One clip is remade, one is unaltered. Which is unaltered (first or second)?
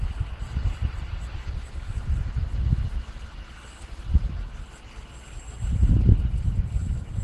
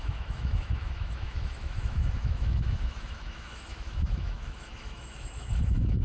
first